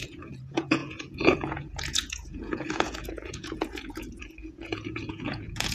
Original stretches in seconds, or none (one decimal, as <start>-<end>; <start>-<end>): none